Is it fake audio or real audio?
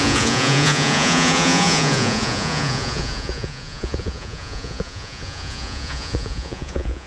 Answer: fake